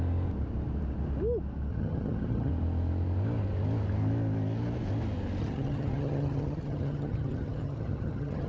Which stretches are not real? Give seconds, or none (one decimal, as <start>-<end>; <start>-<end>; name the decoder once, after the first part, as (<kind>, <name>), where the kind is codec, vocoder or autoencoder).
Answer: 1.7-2.5 (vocoder, HiFi-GAN); 5.4-8.5